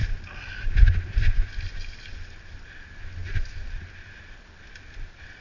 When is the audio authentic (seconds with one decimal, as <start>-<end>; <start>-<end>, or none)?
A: 0.0-5.4